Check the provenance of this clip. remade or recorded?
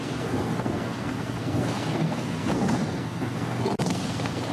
remade